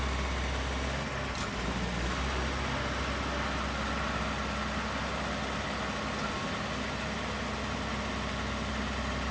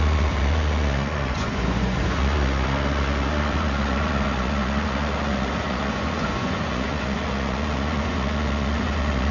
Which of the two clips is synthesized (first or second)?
second